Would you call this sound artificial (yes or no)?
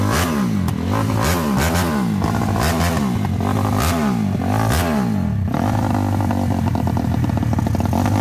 no